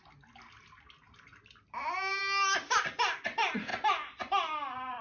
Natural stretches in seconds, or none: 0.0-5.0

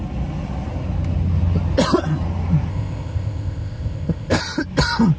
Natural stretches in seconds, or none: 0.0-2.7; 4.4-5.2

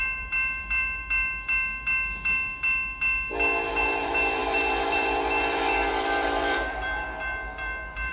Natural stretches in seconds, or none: 1.0-3.7

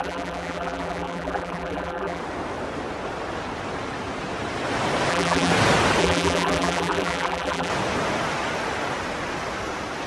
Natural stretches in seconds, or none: 2.2-5.1; 5.5-6.0; 7.7-10.1

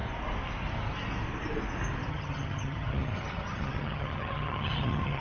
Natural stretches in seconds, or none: 0.0-2.1